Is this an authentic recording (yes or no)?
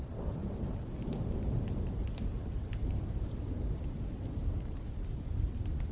no